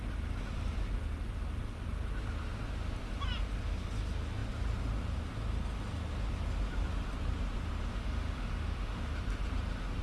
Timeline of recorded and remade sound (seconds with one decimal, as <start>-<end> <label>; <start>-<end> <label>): 0.0-7.9 recorded; 7.9-9.1 remade; 9.1-10.0 recorded